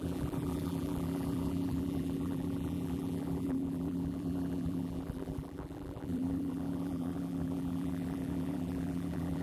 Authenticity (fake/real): fake